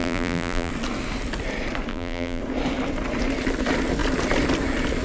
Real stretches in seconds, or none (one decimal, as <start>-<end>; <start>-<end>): 0.7-1.9; 2.4-5.0